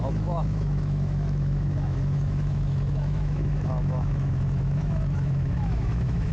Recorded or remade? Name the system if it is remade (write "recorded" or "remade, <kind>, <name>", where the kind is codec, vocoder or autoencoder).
remade, autoencoder, DAC-VAE